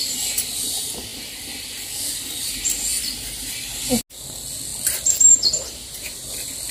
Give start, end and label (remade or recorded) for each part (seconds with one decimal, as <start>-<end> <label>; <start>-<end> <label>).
0.0-1.1 recorded; 1.1-2.0 remade; 2.0-2.9 recorded; 2.9-3.8 remade; 3.8-6.7 recorded